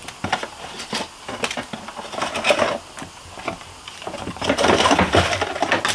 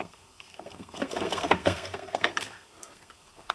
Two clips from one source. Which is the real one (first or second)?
first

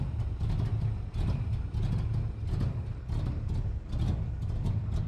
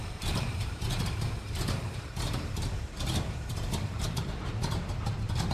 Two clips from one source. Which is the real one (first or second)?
first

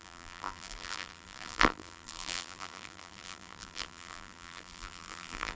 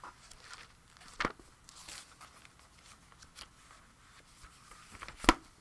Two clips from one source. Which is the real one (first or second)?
second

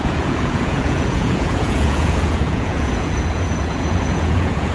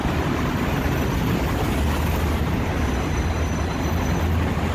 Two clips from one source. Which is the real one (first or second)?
second